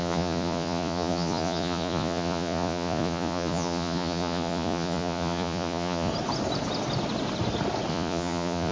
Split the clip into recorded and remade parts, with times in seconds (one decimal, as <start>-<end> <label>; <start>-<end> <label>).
0.0-6.1 remade; 6.1-7.9 recorded; 7.9-8.7 remade